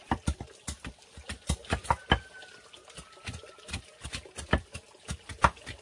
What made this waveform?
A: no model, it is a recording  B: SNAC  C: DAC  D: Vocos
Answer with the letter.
A